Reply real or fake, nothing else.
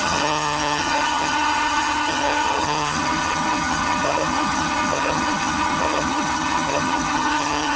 fake